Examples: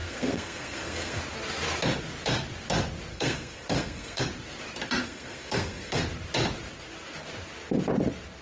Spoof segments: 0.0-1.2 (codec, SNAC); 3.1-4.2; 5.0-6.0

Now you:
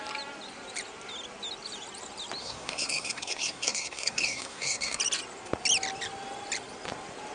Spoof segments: 2.4-5.0 (codec, SNAC)